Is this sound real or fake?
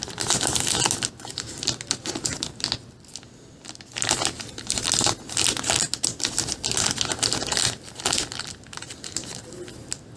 real